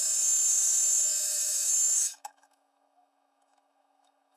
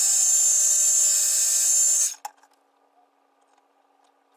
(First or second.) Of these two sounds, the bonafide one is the second